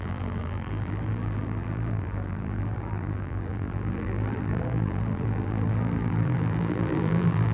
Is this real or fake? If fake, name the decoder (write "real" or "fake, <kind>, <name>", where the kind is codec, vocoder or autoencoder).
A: fake, vocoder, BigVGAN v2